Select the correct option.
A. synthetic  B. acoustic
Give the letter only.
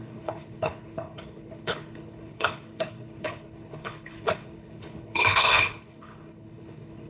A